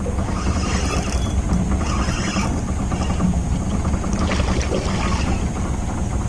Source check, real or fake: real